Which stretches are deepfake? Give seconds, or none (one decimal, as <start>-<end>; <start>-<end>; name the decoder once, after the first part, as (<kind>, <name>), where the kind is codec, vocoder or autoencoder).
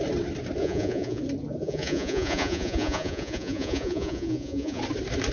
0.6-1.2 (vocoder, Vocos); 1.6-4.8